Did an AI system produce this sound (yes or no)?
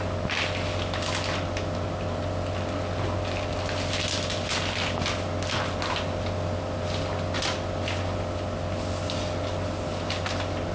no